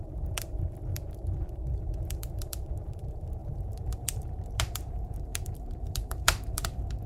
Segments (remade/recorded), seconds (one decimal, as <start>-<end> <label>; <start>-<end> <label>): 0.0-7.1 remade